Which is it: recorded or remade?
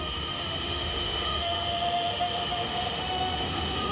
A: remade